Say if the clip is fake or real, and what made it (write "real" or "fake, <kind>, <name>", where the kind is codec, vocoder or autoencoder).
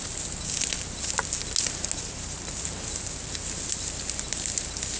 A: real